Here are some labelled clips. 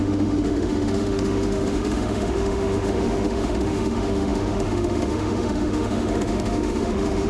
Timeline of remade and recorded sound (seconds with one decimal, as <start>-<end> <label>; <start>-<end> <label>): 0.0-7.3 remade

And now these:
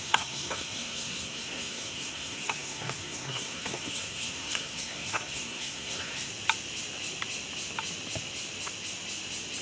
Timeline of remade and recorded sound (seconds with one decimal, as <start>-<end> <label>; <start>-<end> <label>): 0.0-6.3 remade; 6.3-9.6 recorded

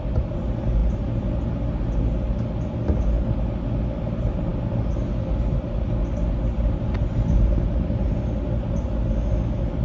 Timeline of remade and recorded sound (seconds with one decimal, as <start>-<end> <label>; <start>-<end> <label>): 0.0-9.8 recorded